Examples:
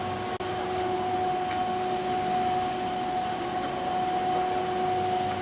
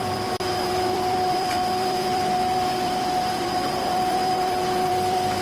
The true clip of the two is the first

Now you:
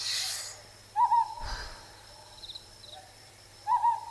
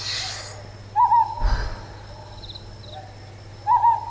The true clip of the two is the second